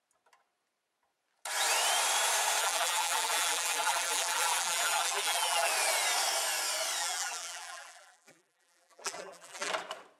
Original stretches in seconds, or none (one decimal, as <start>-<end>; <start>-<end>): 0.0-2.6; 5.7-7.0; 9.7-10.2